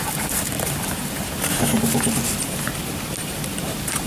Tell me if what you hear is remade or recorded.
remade